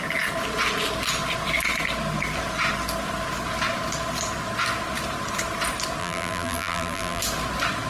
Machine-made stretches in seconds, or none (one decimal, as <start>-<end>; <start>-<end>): 6.0-7.2